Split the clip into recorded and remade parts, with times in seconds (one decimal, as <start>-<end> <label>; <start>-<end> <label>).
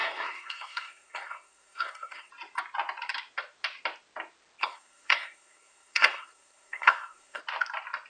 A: 0.0-2.3 remade; 2.3-4.6 recorded; 4.6-7.4 remade; 7.4-8.1 recorded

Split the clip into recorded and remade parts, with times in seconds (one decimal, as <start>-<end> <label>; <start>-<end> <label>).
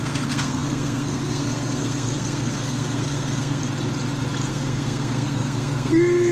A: 0.0-3.6 remade; 3.6-4.5 recorded; 4.5-6.3 remade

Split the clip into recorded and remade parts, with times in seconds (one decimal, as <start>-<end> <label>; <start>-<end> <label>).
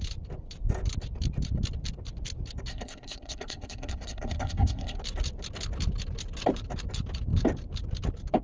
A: 0.0-2.7 recorded; 2.7-5.0 remade; 5.0-8.4 recorded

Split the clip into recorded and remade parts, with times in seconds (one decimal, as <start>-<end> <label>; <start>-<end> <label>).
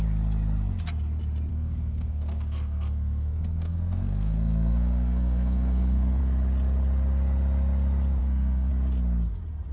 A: 0.0-1.5 recorded; 1.5-6.2 remade; 6.2-8.2 recorded; 8.2-8.7 remade; 8.7-9.7 recorded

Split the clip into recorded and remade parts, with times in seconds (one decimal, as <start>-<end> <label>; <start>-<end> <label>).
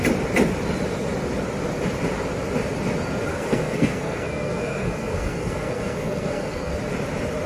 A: 0.0-3.3 recorded; 3.3-6.7 remade; 6.7-7.5 recorded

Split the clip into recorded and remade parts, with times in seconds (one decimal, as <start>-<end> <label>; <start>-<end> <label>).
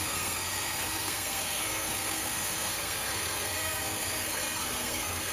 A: 0.0-5.3 remade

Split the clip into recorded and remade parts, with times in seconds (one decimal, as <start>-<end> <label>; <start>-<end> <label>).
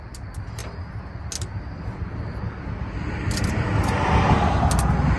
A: 0.0-5.2 recorded